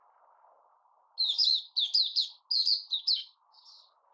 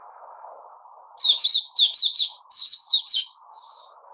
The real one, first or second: first